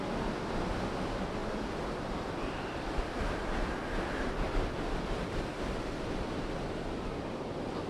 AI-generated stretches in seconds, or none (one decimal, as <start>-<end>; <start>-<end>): 1.4-3.6